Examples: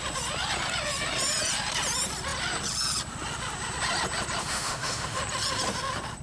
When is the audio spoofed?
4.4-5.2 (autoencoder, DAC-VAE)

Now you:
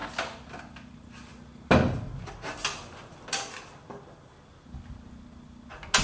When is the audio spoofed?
none

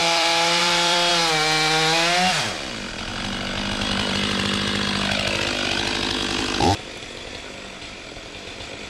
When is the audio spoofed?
0.0-1.1 (vocoder, BigVGAN v2); 2.4-3.1; 7.8-8.9

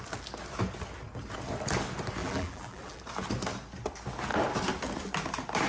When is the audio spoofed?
2.2-3.0 (vocoder, BigVGAN v2)

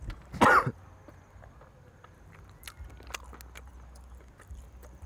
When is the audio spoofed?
none